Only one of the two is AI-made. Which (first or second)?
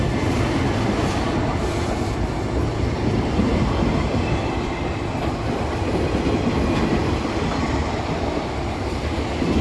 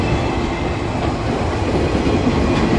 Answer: first